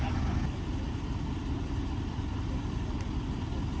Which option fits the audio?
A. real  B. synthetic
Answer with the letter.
B